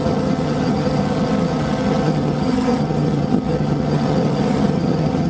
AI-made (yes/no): yes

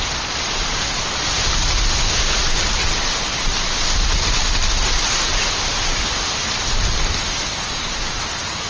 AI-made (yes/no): no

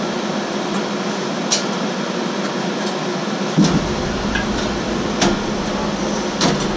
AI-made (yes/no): no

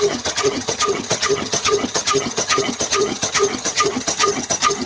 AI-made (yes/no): yes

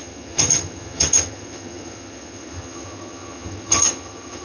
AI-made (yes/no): yes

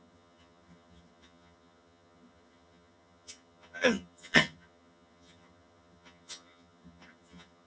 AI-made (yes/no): yes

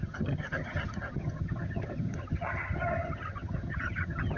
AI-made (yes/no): yes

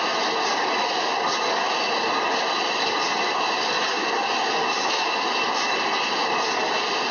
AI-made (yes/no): no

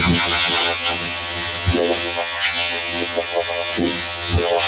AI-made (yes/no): yes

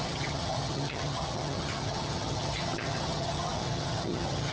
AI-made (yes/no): yes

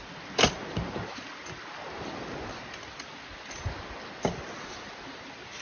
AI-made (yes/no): no